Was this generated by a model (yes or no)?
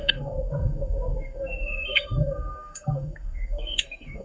yes